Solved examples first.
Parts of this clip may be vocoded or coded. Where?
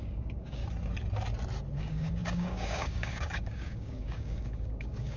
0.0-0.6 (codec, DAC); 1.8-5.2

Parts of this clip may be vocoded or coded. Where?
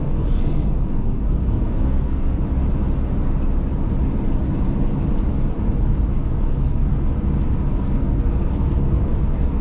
0.0-2.4 (codec, SNAC); 6.1-6.9; 7.8-9.6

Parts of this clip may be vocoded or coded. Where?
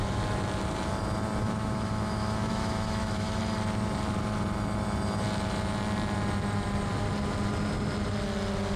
1.4-3.4 (autoencoder, DAC-VAE)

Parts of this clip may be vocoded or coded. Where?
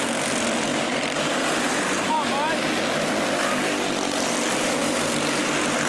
0.7-2.1 (vocoder, BigVGAN v2)